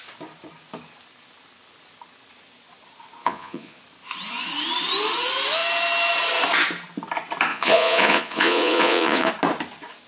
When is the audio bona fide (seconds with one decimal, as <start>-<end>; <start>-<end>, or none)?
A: 0.0-3.2; 3.8-7.5; 9.3-10.1